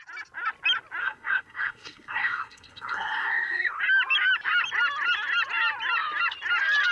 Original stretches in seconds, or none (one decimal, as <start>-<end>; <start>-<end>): 0.0-1.0; 3.8-6.9